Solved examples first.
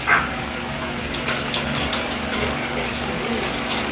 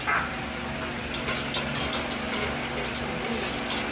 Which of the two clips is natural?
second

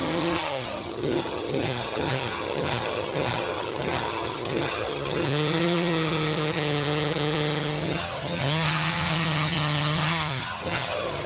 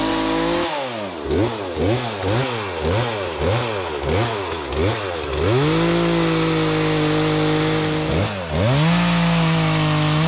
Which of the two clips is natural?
second